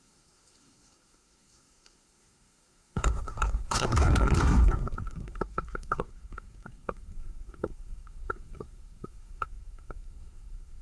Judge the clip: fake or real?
fake